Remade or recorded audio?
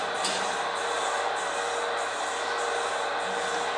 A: recorded